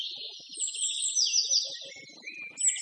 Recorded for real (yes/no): yes